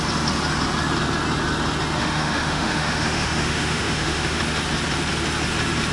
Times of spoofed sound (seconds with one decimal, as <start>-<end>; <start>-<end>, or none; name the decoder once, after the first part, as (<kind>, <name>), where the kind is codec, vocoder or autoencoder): 2.0-4.4 (autoencoder, DAC-VAE)